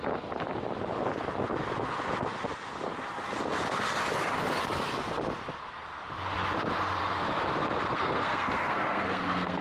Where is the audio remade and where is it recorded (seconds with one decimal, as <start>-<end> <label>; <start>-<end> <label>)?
0.0-7.9 recorded; 7.9-9.6 remade